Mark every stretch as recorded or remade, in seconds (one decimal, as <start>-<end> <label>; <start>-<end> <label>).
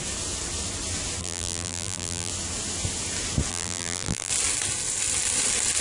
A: 0.0-1.2 recorded; 1.2-2.3 remade; 2.3-3.5 recorded; 3.5-4.3 remade; 4.3-5.8 recorded